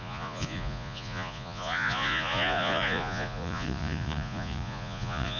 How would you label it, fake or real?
fake